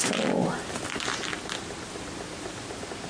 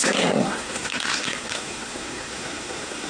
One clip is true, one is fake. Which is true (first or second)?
first